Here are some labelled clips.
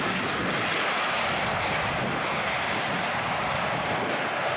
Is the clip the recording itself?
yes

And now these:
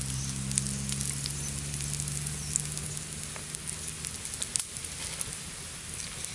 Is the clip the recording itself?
yes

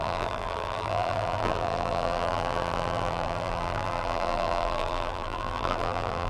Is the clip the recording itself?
no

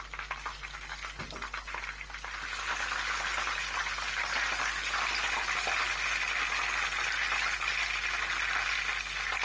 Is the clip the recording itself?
yes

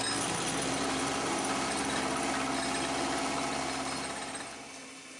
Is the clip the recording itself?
yes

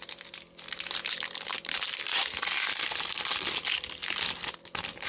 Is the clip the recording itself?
yes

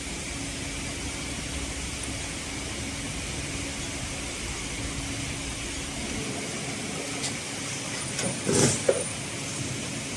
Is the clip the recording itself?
yes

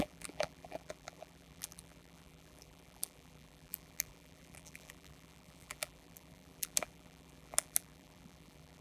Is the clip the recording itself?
no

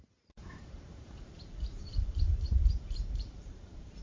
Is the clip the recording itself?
no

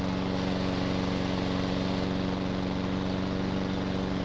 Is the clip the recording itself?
yes